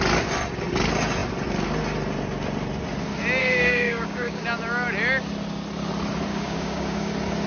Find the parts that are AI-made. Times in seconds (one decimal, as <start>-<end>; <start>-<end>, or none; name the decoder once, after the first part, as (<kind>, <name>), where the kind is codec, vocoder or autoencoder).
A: 3.4-4.4 (codec, DAC); 6.3-7.1